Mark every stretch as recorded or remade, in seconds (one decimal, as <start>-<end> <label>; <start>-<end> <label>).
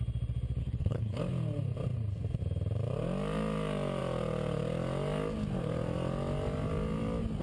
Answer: 0.0-0.6 recorded; 0.6-1.2 remade; 1.2-7.4 recorded